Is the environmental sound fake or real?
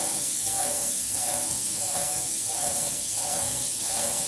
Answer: fake